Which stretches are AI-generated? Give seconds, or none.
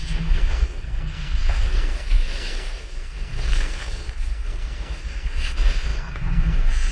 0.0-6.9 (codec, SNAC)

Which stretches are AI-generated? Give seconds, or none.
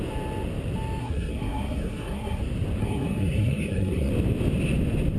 1.0-2.4 (codec, SNAC); 2.8-4.1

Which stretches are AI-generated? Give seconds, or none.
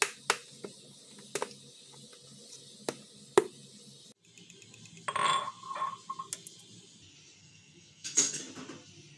7.4-8.4 (codec, SNAC)